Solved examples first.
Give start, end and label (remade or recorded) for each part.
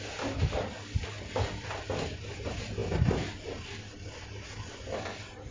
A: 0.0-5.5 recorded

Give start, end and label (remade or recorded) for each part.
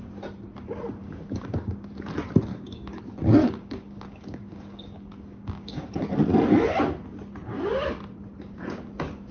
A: 0.0-1.0 recorded; 1.0-1.9 remade; 1.9-2.5 recorded; 2.5-3.0 remade; 3.0-3.4 recorded; 3.4-5.9 remade; 5.9-9.3 recorded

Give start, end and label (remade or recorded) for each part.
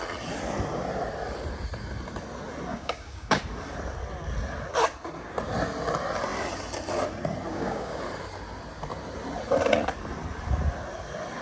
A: 0.0-2.7 recorded; 2.7-3.4 remade; 3.4-7.5 recorded; 7.5-8.0 remade; 8.0-11.4 recorded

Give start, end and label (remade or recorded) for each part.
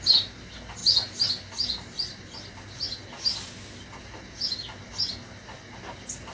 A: 0.0-6.3 recorded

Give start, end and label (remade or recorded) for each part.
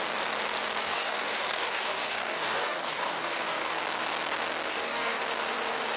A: 0.0-0.8 recorded; 0.8-3.8 remade; 3.8-4.7 recorded; 4.7-5.2 remade; 5.2-6.0 recorded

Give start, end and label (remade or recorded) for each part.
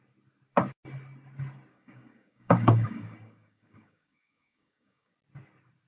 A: 0.0-1.7 recorded; 1.7-5.1 remade; 5.1-5.9 recorded